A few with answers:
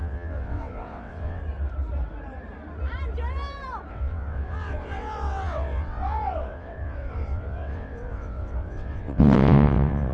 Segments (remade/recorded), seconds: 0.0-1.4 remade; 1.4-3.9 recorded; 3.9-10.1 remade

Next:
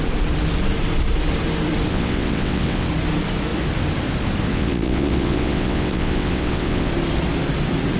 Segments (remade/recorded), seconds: 0.0-1.9 recorded; 1.9-2.9 remade; 2.9-4.5 recorded; 4.5-6.9 remade; 6.9-8.0 recorded

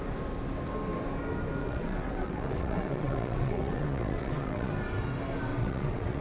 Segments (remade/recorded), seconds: 0.0-1.6 recorded; 1.6-4.7 remade; 4.7-5.5 recorded; 5.5-6.2 remade

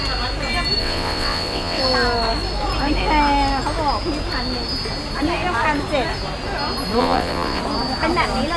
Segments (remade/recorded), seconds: 0.0-0.8 recorded; 0.8-1.8 remade; 1.8-7.0 recorded; 7.0-7.6 remade; 7.6-8.6 recorded

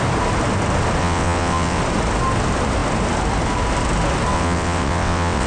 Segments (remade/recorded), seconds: 0.0-1.0 recorded; 1.0-1.8 remade; 1.8-4.3 recorded; 4.3-5.5 remade

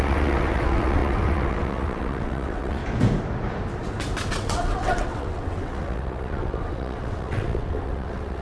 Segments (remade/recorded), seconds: 0.0-2.8 remade; 2.8-4.3 recorded; 4.3-8.4 remade